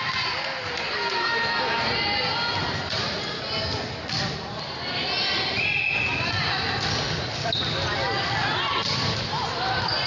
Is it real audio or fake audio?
real